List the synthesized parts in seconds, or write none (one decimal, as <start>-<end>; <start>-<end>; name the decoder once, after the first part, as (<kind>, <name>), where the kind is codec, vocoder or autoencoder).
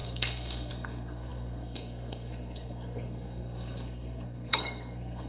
0.0-5.3 (codec, SNAC)